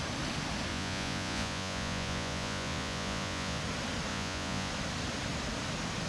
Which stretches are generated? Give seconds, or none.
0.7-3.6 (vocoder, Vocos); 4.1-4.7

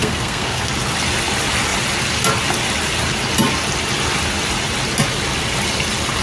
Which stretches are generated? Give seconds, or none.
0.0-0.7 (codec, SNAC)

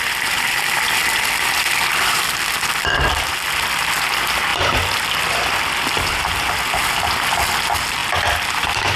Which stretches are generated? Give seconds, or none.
1.0-3.3 (vocoder, BigVGAN v2); 4.5-6.3; 8.0-9.0